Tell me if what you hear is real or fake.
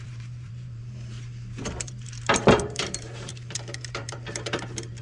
fake